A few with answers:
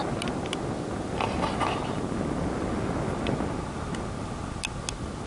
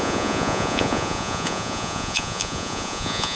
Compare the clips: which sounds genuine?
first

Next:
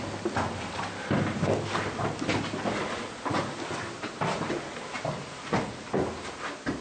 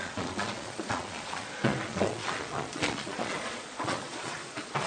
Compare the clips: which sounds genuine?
first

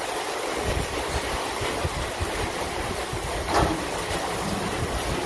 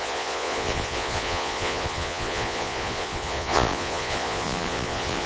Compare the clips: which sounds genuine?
first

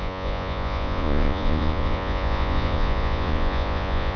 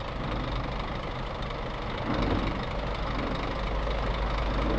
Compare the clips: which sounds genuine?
second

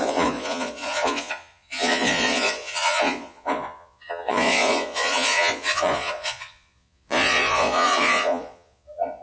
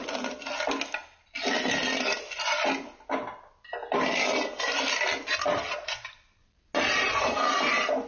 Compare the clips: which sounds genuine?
second